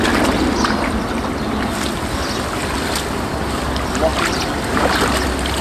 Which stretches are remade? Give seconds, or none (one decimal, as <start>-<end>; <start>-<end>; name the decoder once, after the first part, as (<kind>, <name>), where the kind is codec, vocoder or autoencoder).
none